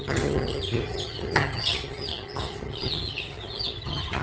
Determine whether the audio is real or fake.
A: fake